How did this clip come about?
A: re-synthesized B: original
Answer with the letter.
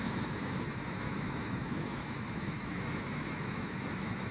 A